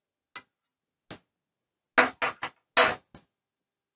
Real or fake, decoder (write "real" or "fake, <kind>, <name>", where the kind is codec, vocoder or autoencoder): real